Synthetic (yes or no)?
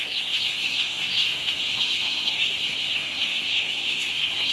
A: yes